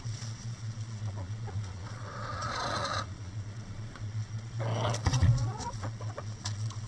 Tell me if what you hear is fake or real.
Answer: fake